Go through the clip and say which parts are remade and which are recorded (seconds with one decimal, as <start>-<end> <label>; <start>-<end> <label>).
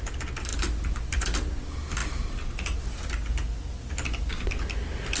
0.0-5.2 recorded